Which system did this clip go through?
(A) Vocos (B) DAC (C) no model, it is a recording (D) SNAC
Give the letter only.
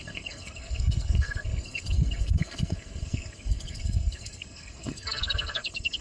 D